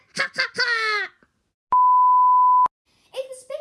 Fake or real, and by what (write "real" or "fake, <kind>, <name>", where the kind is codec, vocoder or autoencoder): real